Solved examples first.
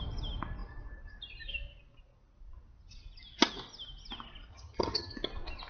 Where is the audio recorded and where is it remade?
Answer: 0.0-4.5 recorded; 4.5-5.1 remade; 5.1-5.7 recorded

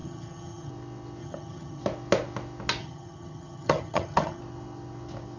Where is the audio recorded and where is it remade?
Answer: 0.0-0.7 remade; 0.7-1.2 recorded; 1.2-1.8 remade; 1.8-2.8 recorded; 2.8-4.4 remade; 4.4-5.4 recorded

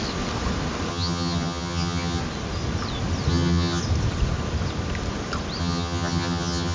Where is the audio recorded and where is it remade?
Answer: 0.0-0.9 recorded; 0.9-2.2 remade; 2.2-3.3 recorded; 3.3-3.8 remade; 3.8-5.6 recorded; 5.6-6.7 remade

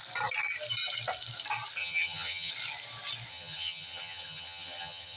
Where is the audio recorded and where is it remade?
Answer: 0.0-1.8 recorded; 1.8-2.5 remade; 2.5-3.3 recorded; 3.3-5.2 remade

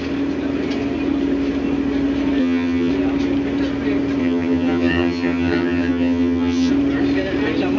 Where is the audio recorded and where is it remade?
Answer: 0.0-2.4 recorded; 2.4-2.9 remade; 2.9-4.2 recorded; 4.2-6.7 remade; 6.7-7.8 recorded

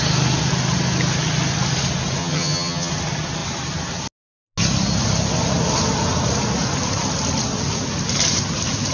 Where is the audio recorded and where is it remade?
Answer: 0.0-2.2 recorded; 2.2-2.9 remade; 2.9-8.9 recorded

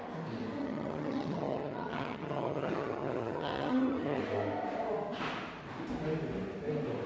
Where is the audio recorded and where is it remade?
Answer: 0.0-0.6 recorded; 0.6-4.2 remade; 4.2-7.1 recorded

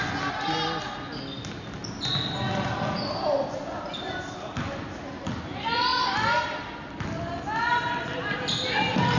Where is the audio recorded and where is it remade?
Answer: 0.0-9.2 recorded